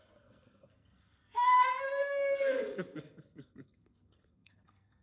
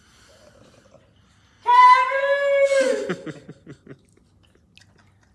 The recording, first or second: second